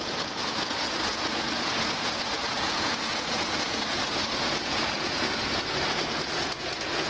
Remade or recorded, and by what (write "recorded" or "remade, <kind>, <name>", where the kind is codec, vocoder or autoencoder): remade, vocoder, Vocos